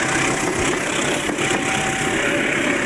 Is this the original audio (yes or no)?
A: yes